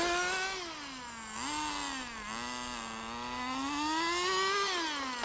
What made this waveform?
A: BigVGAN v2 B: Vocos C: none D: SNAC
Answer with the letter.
C